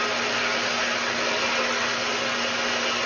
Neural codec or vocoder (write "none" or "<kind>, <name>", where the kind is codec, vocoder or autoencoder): none